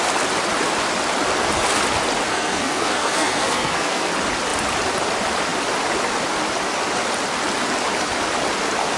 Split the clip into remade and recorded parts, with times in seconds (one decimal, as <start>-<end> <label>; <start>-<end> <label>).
0.0-2.3 recorded; 2.3-4.1 remade; 4.1-9.0 recorded